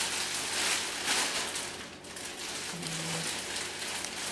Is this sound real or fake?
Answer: real